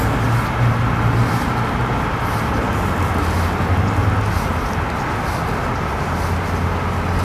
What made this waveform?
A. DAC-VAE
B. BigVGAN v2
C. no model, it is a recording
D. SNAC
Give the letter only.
C